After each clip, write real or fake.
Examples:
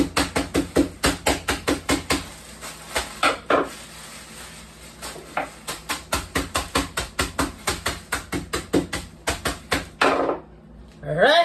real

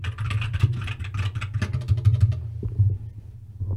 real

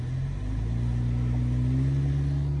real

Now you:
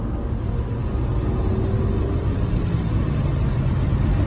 real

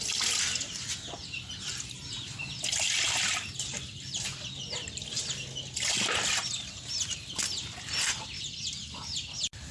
real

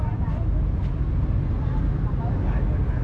real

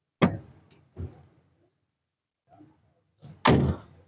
real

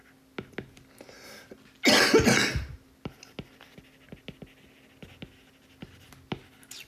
real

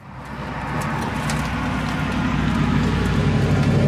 real